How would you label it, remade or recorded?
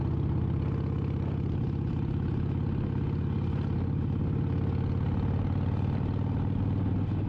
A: recorded